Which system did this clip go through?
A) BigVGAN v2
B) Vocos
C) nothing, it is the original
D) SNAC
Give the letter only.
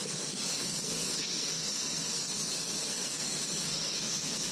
D